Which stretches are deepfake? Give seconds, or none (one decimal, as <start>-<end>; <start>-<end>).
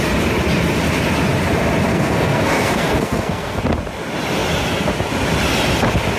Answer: 1.9-3.6